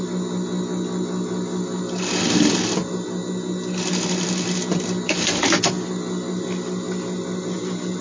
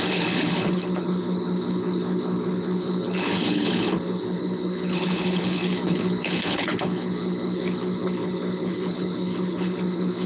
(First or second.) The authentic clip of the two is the first